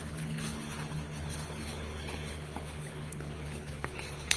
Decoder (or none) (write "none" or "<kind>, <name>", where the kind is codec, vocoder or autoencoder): codec, HILCodec